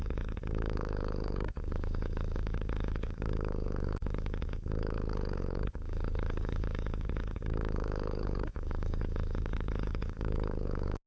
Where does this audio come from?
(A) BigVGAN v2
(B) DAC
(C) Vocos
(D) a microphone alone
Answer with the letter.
B